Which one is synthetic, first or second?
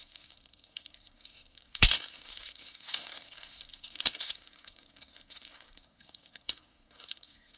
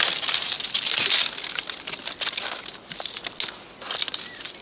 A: first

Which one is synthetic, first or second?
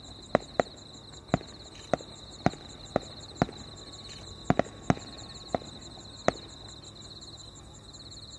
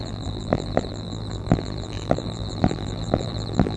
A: second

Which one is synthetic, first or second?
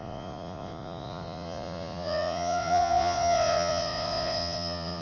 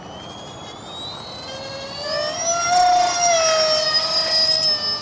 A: first